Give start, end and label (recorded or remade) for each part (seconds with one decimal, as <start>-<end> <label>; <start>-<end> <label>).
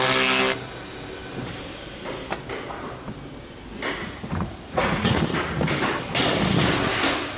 0.0-4.0 recorded; 4.0-5.2 remade; 5.2-7.4 recorded